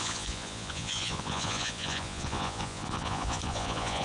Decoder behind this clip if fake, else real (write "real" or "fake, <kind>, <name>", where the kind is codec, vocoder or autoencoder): fake, vocoder, Vocos